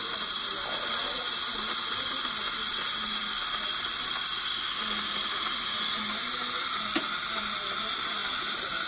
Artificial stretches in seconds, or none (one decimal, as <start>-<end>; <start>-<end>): none